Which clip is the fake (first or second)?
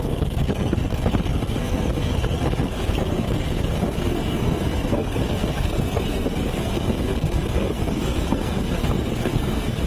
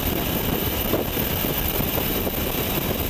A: first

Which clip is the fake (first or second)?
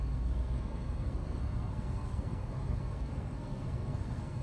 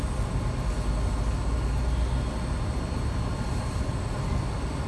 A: first